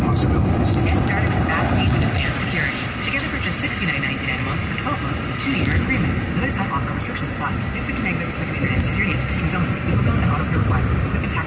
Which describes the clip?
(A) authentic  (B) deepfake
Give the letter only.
A